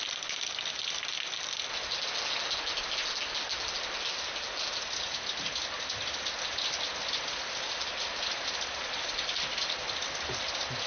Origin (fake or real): real